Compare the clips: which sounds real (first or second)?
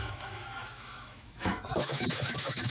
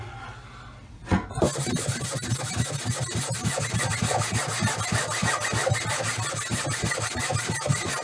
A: second